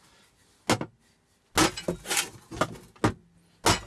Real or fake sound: real